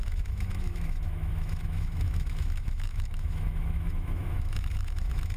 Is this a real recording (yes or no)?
no